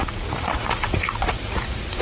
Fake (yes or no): yes